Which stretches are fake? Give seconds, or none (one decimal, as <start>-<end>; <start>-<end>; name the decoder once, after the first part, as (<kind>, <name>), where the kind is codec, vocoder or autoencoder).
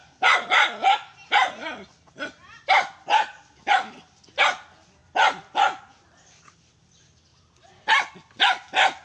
none